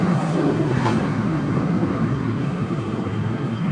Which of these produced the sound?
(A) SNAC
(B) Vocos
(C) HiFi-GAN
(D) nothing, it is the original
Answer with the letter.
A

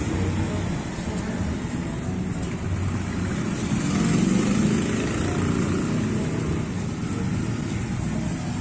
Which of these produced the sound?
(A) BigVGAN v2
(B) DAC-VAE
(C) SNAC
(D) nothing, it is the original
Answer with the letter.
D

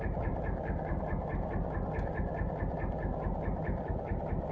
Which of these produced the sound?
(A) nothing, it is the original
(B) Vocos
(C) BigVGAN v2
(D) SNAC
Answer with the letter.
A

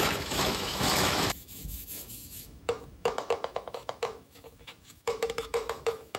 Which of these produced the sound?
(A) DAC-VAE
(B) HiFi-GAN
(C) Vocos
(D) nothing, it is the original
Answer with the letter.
A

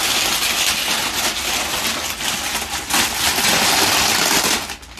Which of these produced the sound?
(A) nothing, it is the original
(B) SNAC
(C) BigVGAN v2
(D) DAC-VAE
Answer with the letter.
A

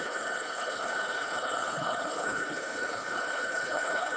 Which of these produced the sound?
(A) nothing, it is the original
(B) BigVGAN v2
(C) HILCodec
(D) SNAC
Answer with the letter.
C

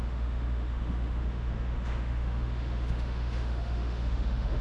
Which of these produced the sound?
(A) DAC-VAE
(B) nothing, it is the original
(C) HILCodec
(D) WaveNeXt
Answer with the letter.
A